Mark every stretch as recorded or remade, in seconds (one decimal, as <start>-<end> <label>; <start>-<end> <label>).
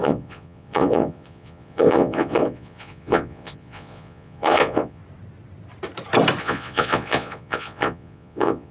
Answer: 0.0-5.0 remade; 5.0-6.4 recorded; 6.4-8.7 remade